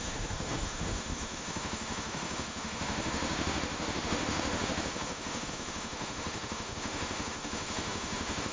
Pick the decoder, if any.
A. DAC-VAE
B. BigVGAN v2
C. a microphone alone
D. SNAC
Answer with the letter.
A